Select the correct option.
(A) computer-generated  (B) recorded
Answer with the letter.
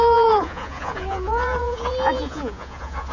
A